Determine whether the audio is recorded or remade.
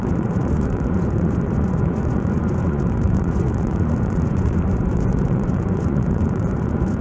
remade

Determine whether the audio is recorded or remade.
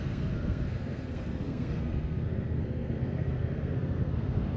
remade